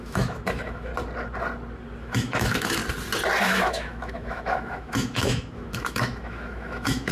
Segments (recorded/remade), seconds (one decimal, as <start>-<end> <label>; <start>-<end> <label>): 0.0-0.9 remade; 0.9-2.0 recorded; 2.0-2.8 remade; 2.8-3.4 recorded; 3.4-7.1 remade